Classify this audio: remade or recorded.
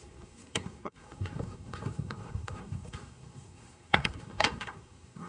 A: remade